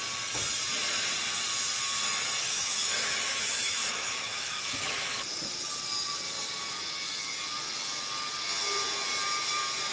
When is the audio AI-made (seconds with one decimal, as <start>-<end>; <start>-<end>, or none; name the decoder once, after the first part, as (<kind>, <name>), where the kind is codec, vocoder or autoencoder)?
2.4-4.9 (autoencoder, DAC-VAE)

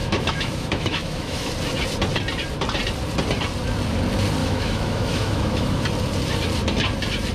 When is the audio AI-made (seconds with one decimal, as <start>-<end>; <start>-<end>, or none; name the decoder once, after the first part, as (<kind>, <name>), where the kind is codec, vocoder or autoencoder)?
0.0-1.5 (autoencoder, DAC-VAE); 4.4-5.8

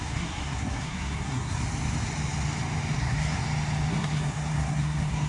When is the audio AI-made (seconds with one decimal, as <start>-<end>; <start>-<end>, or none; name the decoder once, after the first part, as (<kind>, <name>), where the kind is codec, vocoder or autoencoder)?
0.0-1.6 (codec, SNAC); 3.0-3.4; 3.9-5.3

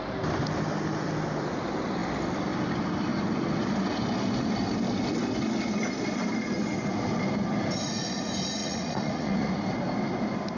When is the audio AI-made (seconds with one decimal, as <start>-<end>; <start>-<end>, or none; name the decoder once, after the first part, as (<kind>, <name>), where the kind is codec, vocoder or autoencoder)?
8.6-9.5 (vocoder, Vocos)

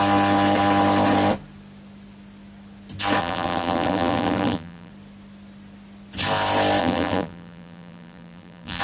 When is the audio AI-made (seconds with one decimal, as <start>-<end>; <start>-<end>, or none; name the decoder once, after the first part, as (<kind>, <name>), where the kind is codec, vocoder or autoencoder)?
3.2-4.9 (vocoder, BigVGAN v2); 6.8-8.8

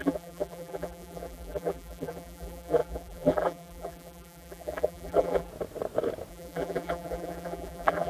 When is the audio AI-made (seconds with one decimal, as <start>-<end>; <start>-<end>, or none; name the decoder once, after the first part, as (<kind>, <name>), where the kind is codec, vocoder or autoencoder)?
0.0-5.5 (vocoder, BigVGAN v2); 6.3-8.1